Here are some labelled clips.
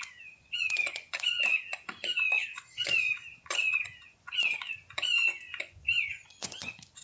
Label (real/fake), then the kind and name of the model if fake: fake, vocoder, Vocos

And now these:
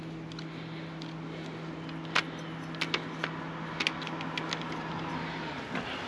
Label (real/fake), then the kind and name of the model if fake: real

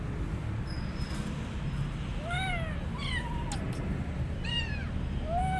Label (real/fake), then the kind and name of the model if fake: real